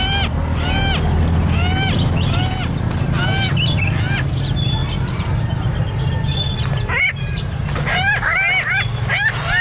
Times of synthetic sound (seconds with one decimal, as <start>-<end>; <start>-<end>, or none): none